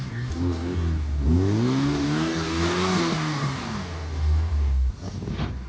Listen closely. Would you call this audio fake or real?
fake